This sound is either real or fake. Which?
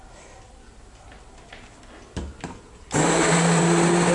real